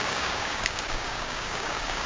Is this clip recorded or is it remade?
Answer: remade